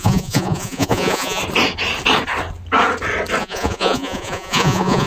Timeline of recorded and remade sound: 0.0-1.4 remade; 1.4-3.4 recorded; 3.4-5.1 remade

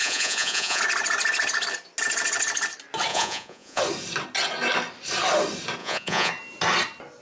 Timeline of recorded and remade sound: 0.0-0.8 remade; 0.8-3.1 recorded; 3.1-3.8 remade; 3.8-5.8 recorded; 5.8-6.3 remade; 6.3-7.2 recorded

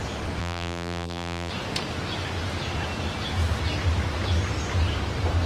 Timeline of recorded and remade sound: 0.0-0.4 recorded; 0.4-1.5 remade; 1.5-5.5 recorded

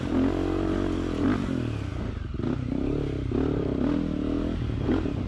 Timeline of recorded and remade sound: 0.0-5.3 recorded